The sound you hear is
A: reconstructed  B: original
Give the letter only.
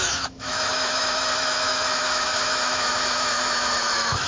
A